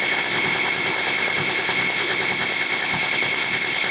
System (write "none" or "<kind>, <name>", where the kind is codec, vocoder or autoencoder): codec, ZipCodec